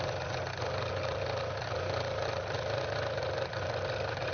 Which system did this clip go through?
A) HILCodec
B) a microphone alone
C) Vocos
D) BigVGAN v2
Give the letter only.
B